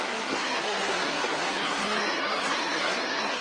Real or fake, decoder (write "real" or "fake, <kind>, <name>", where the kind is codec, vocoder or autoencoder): fake, codec, SNAC